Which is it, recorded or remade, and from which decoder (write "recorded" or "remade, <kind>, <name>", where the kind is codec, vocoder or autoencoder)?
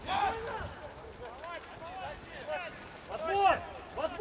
recorded